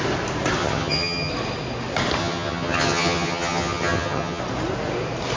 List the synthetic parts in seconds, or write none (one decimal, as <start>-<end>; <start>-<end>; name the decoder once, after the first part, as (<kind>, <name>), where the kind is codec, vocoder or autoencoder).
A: 0.6-1.3 (vocoder, HiFi-GAN); 2.2-4.4